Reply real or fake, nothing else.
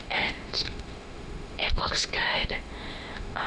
fake